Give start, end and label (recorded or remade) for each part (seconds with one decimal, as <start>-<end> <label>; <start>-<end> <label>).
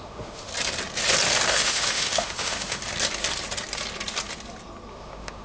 0.0-0.5 remade; 0.5-1.5 recorded; 1.5-2.8 remade; 2.8-4.9 recorded; 4.9-5.4 remade